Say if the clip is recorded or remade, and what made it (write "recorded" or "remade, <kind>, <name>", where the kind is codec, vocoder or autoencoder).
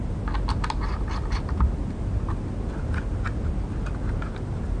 recorded